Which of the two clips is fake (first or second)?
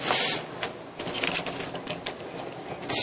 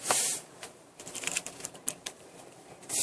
second